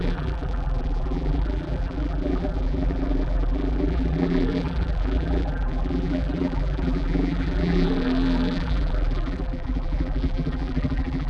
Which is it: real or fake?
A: fake